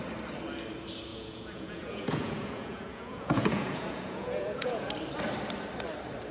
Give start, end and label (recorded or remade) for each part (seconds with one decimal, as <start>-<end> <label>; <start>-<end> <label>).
0.0-1.1 recorded; 1.1-4.9 remade; 4.9-6.3 recorded